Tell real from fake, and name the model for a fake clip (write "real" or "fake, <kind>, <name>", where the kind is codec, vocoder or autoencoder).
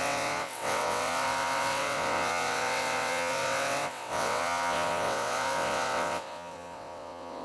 fake, vocoder, WaveNeXt